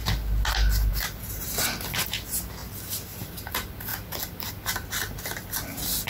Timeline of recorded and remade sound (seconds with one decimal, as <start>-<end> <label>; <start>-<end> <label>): 0.0-6.1 recorded